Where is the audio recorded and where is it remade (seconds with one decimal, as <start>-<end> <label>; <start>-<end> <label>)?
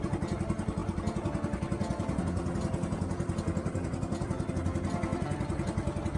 0.0-6.2 recorded